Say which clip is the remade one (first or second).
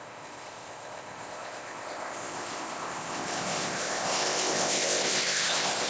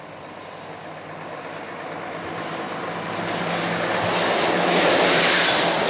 first